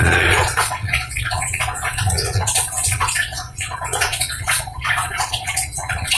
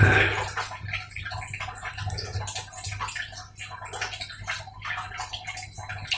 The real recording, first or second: second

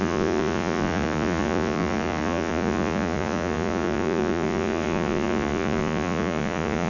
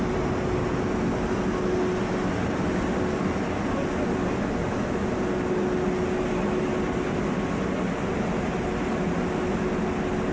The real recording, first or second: second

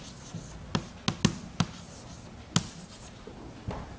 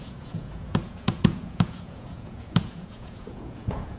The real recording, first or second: first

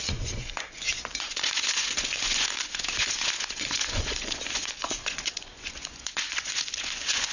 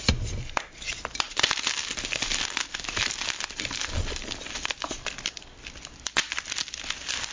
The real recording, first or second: second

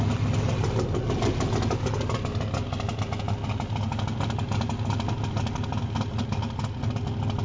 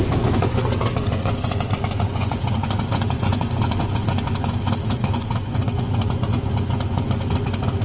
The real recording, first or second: first